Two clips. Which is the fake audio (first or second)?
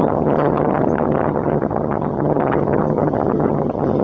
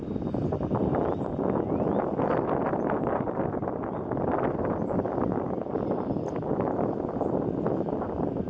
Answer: first